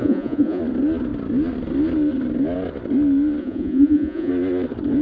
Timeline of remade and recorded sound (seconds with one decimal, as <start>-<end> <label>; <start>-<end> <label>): 0.0-0.6 remade; 0.6-3.4 recorded; 3.4-4.3 remade; 4.3-5.0 recorded